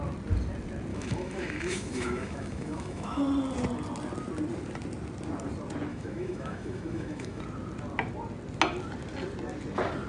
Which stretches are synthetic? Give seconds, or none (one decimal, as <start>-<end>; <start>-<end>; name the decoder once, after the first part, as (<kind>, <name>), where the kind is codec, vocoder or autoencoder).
0.9-3.2 (autoencoder, DAC-VAE); 5.9-7.4